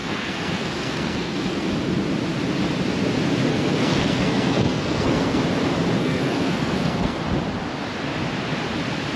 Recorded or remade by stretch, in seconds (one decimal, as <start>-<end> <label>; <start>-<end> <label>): 0.0-1.7 remade; 1.7-3.5 recorded; 3.5-5.4 remade; 5.4-6.0 recorded; 6.0-7.2 remade; 7.2-9.2 recorded